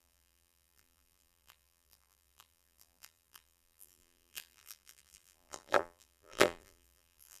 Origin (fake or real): fake